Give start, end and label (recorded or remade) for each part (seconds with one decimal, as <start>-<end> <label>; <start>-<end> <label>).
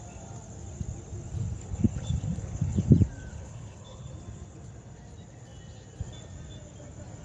0.0-1.6 recorded; 1.6-2.9 remade; 2.9-3.3 recorded; 3.3-4.1 remade; 4.1-7.2 recorded